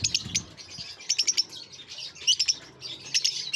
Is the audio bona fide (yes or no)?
yes